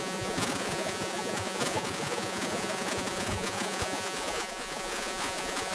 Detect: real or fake fake